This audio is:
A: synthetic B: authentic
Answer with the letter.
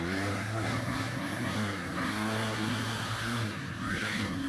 A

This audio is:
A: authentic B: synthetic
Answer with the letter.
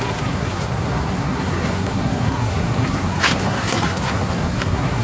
B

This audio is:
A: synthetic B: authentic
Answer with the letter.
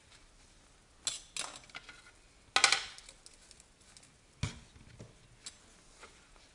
B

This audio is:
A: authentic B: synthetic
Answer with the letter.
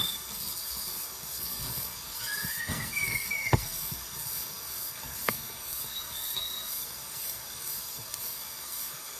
B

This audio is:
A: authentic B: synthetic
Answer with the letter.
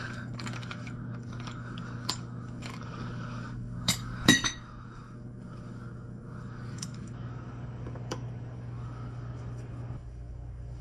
B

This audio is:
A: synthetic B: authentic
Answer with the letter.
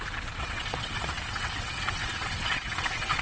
A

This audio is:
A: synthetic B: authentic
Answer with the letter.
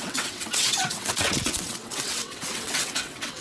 A